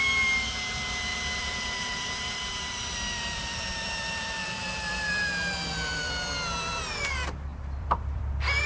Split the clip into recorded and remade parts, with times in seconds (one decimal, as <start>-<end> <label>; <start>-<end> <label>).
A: 0.0-1.1 recorded; 1.1-6.1 remade; 6.1-7.5 recorded; 7.5-8.2 remade; 8.2-8.7 recorded